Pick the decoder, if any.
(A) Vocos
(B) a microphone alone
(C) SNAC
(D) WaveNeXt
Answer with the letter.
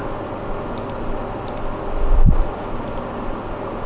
B